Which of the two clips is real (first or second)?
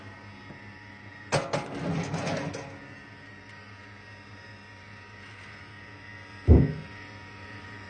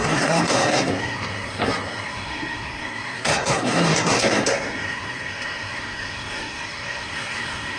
first